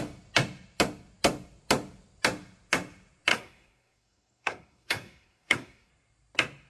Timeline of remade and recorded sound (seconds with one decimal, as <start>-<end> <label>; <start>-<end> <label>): 0.0-3.3 recorded; 3.3-5.9 remade; 5.9-6.7 recorded